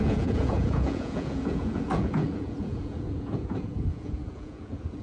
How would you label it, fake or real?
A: fake